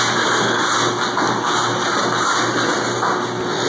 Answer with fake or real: real